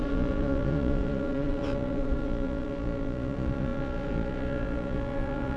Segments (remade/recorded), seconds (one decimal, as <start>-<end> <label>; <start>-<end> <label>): 0.0-5.6 remade